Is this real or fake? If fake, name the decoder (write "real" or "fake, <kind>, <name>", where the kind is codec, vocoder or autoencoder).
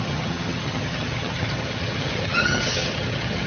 fake, vocoder, HiFi-GAN